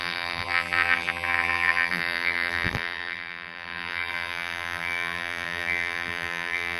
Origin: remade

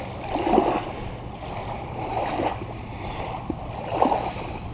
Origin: recorded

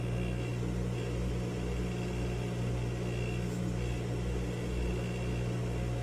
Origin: recorded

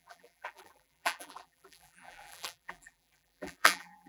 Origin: remade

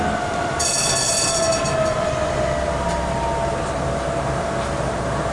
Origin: recorded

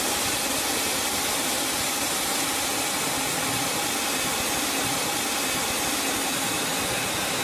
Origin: recorded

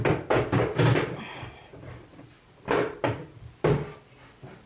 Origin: recorded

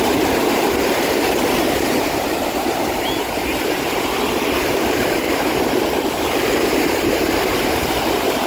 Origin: remade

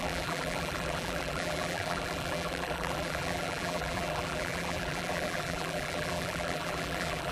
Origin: remade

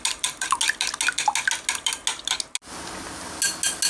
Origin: recorded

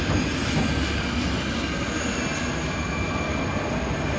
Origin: recorded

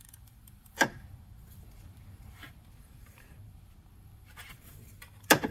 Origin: remade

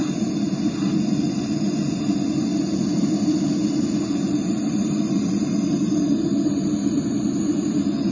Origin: recorded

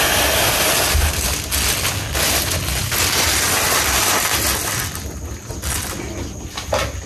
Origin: recorded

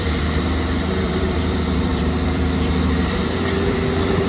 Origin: remade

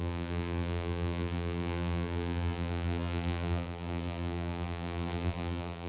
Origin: remade